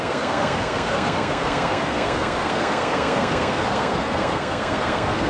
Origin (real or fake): fake